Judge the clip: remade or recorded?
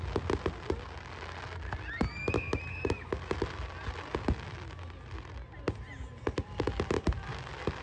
recorded